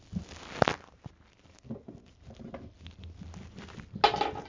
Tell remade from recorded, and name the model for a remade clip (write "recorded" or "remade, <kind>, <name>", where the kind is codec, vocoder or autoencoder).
recorded